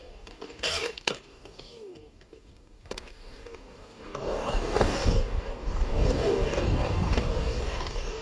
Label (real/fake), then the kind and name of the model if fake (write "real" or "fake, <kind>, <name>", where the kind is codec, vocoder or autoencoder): fake, codec, DAC